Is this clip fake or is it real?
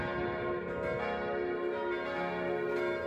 real